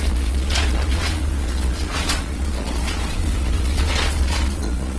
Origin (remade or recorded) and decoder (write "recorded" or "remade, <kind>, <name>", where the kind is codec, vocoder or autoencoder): remade, vocoder, Vocos